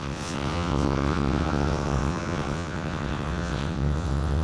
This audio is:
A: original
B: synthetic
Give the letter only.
B